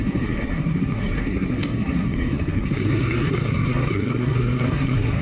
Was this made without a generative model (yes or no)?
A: no